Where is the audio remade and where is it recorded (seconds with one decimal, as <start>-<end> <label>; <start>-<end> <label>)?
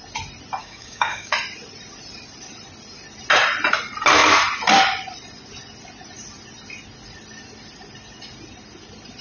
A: 0.0-0.6 recorded; 0.6-1.3 remade; 1.3-9.2 recorded